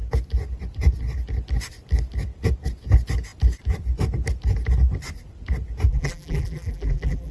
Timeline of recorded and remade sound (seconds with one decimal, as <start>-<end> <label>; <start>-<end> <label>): 0.0-5.9 recorded; 5.9-7.3 remade